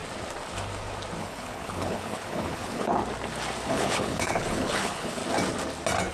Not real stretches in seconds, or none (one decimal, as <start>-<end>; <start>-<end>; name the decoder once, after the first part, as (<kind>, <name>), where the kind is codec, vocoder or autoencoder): 1.2-3.0 (codec, HILCodec); 3.7-5.2